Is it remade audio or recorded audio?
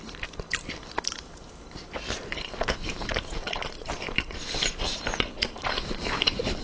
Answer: remade